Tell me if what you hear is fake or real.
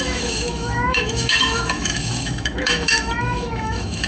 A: fake